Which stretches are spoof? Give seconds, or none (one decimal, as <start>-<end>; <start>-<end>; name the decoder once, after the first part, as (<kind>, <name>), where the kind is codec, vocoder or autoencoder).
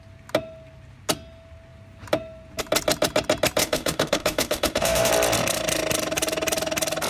3.6-5.1 (autoencoder, DAC-VAE)